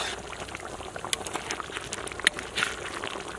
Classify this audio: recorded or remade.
recorded